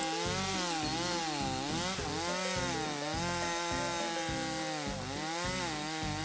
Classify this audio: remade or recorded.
recorded